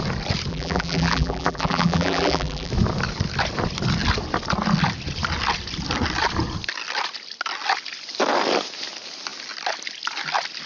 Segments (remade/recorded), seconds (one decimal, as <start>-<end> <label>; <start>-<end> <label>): 0.0-0.5 recorded; 0.5-2.7 remade; 2.7-10.7 recorded

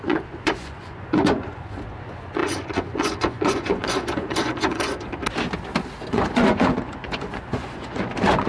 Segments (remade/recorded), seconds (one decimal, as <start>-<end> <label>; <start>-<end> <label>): 0.0-5.2 remade; 5.2-6.1 recorded; 6.1-8.5 remade

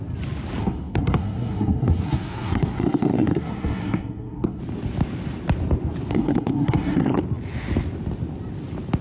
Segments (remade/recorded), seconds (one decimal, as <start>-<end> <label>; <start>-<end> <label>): 0.0-0.6 recorded; 0.6-4.6 remade; 4.6-6.1 recorded; 6.1-7.2 remade; 7.2-9.0 recorded